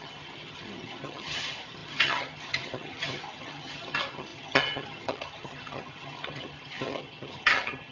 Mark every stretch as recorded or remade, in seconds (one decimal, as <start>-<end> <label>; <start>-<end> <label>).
0.0-7.9 remade